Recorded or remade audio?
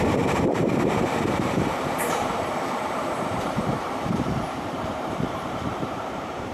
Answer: remade